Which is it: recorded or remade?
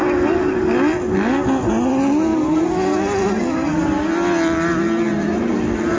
recorded